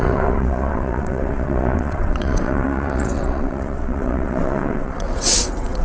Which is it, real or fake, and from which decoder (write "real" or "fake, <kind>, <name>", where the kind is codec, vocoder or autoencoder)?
fake, vocoder, WaveNeXt